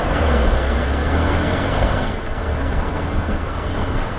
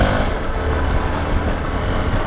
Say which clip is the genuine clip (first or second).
second